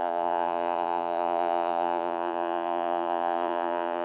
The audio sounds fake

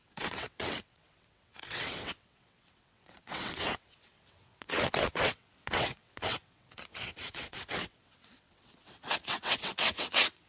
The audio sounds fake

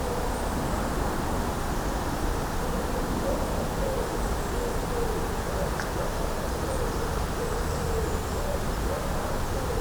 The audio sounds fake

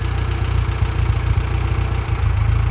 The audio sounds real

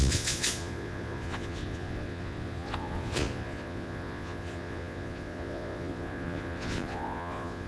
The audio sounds fake